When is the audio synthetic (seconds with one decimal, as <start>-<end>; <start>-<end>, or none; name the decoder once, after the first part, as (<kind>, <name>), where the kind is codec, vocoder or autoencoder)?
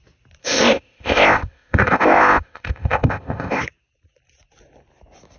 0.4-3.6 (codec, ZipCodec)